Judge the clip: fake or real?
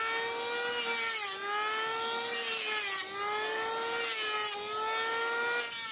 real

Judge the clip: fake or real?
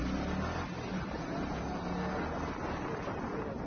real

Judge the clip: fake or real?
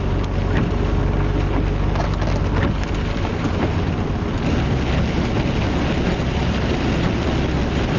real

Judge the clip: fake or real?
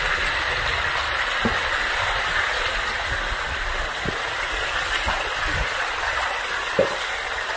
real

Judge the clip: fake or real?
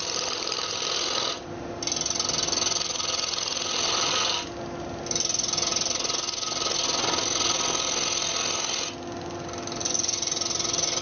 real